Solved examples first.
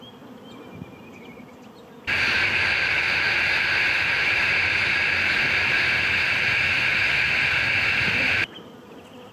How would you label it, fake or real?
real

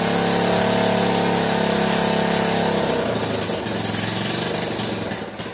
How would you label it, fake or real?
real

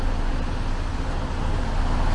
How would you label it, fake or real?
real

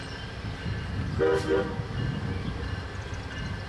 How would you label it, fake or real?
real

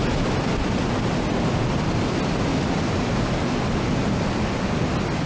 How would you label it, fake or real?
real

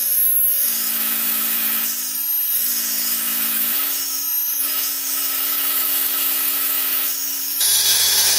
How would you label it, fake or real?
fake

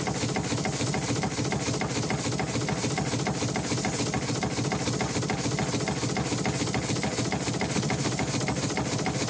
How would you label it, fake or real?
real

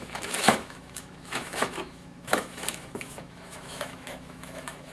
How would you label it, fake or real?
fake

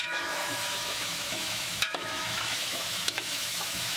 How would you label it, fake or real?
fake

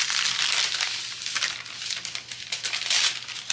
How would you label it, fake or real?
real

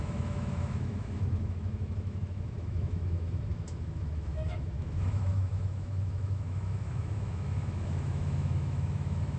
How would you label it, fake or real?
fake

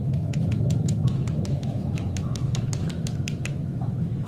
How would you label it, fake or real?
fake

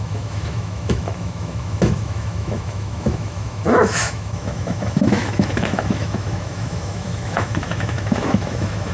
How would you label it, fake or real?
fake